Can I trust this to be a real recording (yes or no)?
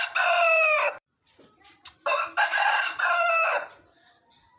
no